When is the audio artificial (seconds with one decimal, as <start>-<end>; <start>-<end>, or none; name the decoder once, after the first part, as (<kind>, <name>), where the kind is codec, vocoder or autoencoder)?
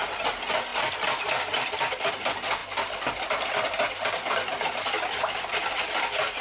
none